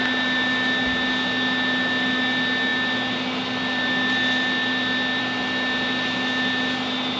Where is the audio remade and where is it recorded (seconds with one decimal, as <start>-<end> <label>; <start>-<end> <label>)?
0.0-7.2 recorded